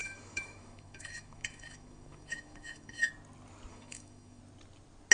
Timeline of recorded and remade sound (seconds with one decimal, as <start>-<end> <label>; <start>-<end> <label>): 0.0-3.1 remade; 3.1-3.7 recorded; 3.7-4.4 remade; 4.4-5.1 recorded